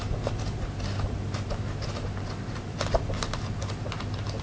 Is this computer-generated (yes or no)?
no